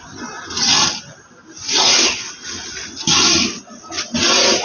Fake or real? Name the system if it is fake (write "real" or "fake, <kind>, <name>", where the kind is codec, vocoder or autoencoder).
real